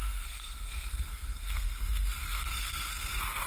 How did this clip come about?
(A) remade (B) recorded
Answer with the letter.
A